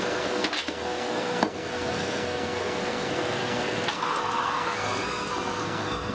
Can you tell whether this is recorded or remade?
remade